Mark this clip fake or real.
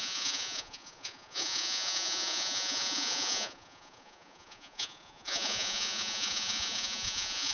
fake